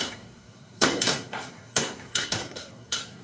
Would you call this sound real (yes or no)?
no